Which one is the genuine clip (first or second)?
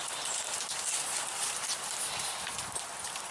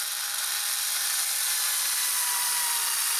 first